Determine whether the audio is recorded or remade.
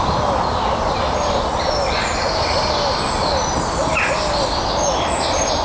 recorded